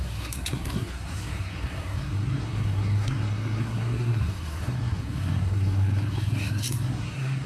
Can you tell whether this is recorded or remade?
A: remade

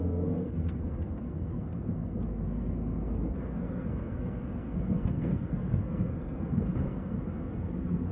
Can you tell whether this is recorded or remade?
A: remade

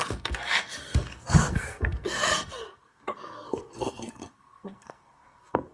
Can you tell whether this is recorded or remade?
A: remade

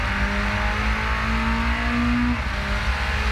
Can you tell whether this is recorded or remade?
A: recorded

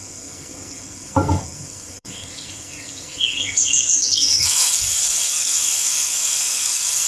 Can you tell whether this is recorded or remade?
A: remade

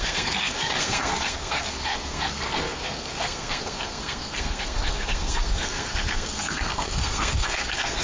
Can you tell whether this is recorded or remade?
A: remade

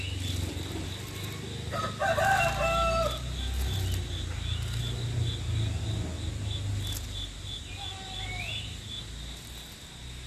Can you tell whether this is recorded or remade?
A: recorded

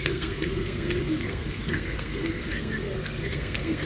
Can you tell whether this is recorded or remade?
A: remade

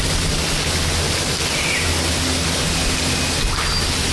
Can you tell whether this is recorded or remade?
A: recorded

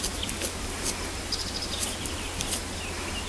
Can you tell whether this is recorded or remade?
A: recorded